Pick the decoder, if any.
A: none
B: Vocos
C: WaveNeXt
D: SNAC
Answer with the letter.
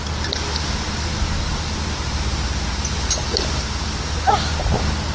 A